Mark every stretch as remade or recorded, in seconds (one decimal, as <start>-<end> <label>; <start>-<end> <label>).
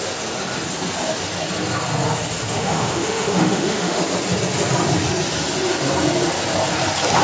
0.0-2.6 recorded; 2.6-4.0 remade; 4.0-7.2 recorded